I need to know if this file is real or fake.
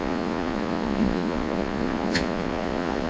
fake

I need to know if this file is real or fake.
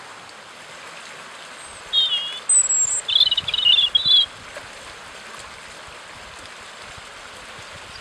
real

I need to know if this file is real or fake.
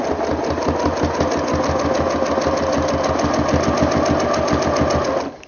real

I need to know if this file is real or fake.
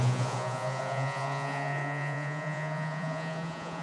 fake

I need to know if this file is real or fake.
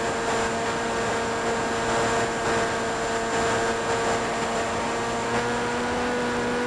real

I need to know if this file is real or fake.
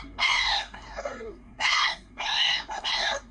fake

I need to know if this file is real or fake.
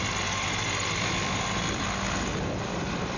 real